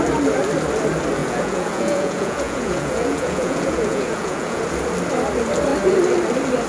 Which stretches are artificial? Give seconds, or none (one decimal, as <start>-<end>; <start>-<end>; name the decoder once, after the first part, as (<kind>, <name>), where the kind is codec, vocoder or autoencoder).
1.2-4.6 (vocoder, Vocos)